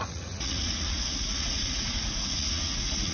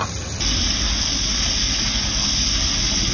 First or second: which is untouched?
second